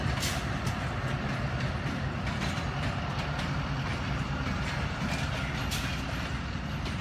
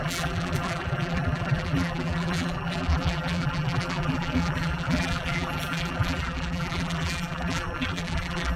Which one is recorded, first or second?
first